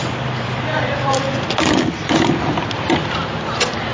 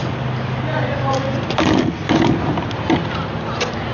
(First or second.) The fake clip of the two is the first